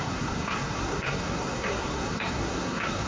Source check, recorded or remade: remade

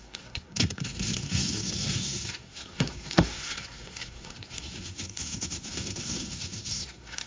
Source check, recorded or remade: remade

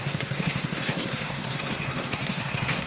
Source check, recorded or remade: remade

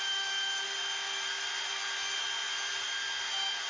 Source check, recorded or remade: recorded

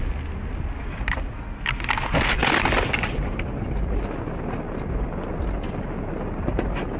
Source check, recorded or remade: recorded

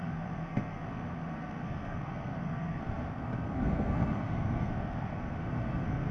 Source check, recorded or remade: remade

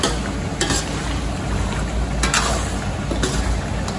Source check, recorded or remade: recorded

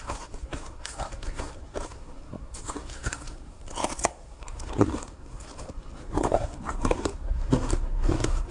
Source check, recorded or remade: remade